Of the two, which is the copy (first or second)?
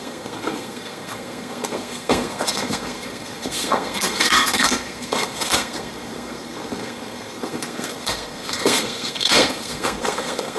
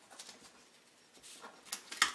first